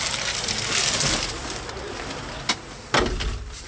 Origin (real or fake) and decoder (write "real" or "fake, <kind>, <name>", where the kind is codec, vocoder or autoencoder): real